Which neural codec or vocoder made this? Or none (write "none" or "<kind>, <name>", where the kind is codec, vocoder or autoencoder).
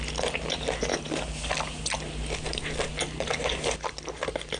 none